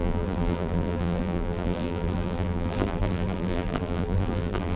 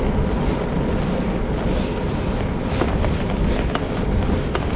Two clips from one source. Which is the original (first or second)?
second